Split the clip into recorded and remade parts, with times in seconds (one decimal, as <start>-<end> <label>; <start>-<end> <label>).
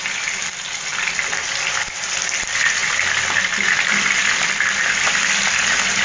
0.0-6.0 recorded